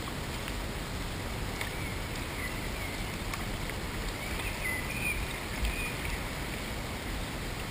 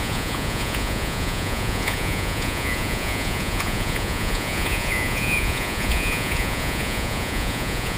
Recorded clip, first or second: first